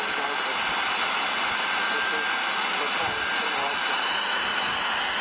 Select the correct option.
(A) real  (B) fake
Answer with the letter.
A